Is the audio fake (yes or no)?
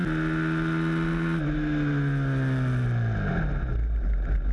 no